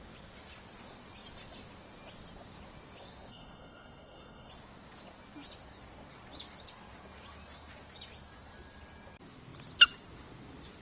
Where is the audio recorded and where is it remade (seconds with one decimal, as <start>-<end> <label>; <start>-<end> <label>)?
0.0-3.3 recorded; 3.3-4.5 remade; 4.5-10.8 recorded